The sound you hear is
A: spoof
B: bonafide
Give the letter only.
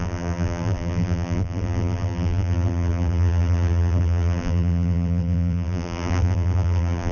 A